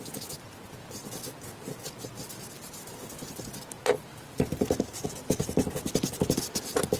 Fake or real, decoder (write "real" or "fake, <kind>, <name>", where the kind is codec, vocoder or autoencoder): real